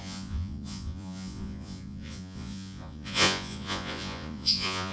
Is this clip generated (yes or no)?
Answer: yes